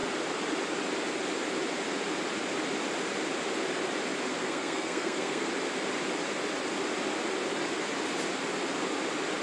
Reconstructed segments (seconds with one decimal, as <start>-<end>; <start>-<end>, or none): 4.4-5.5